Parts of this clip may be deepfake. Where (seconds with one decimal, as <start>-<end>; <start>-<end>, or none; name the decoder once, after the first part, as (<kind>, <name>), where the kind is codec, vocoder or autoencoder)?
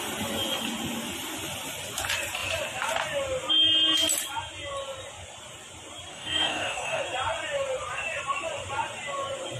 6.1-7.0 (codec, DAC)